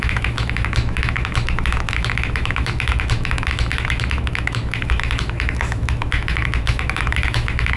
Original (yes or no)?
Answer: no